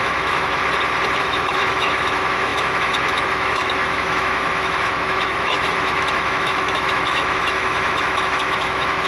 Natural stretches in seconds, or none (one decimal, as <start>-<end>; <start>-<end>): 0.6-1.2